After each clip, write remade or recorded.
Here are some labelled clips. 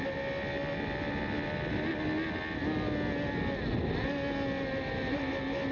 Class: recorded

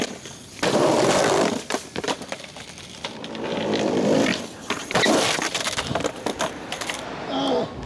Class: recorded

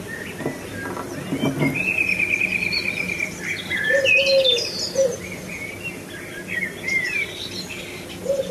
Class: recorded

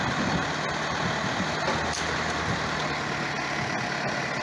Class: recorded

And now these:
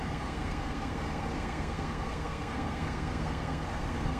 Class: remade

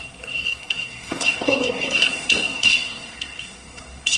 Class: remade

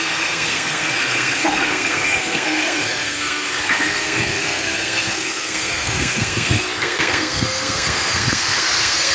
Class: remade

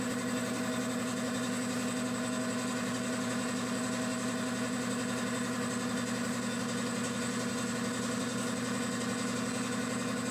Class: recorded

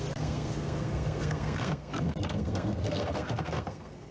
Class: remade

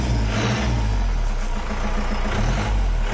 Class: recorded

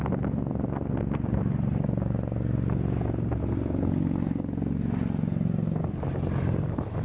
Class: recorded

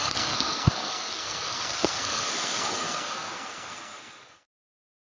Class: remade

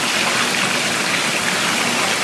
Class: recorded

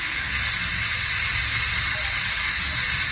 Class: recorded